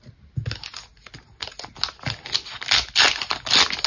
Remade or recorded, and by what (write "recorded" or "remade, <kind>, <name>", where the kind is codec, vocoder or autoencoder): recorded